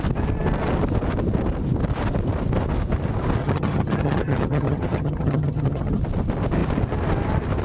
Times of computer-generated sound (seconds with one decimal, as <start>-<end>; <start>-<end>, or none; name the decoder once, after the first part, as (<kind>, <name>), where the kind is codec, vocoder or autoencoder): 3.4-6.0 (vocoder, HiFi-GAN)